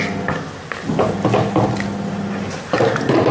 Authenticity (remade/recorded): recorded